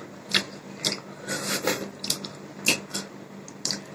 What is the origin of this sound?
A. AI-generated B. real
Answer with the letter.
A